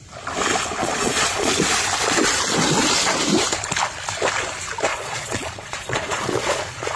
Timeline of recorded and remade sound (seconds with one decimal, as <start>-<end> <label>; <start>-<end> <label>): 0.0-0.8 recorded; 0.8-1.5 remade; 1.5-4.9 recorded; 4.9-7.0 remade